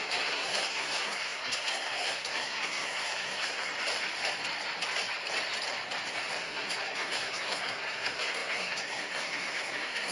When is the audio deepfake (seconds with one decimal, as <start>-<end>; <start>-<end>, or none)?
0.0-3.7; 6.3-10.1